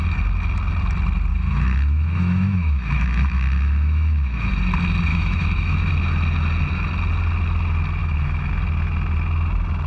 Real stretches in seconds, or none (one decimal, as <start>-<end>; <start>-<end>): 0.0-1.3; 4.5-5.1; 5.9-8.0; 8.5-9.9